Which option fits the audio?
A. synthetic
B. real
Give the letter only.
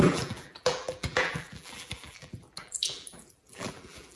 A